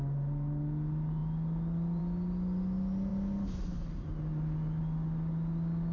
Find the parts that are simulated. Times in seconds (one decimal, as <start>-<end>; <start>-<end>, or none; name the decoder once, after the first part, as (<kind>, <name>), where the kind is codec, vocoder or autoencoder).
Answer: none